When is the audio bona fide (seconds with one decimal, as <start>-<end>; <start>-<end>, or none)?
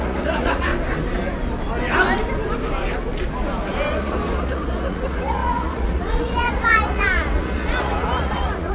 0.7-3.9